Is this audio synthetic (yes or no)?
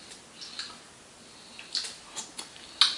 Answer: no